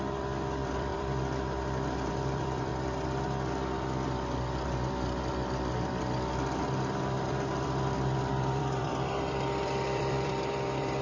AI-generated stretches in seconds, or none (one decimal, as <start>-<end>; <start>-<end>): 0.0-2.7; 7.0-11.0